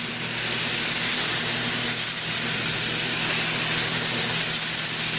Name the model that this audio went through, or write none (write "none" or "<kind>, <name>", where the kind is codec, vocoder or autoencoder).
none